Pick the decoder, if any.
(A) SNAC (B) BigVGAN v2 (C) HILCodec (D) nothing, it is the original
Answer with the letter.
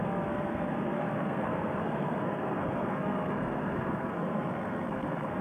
A